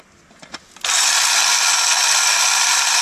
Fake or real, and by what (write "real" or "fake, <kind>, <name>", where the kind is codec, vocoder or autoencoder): real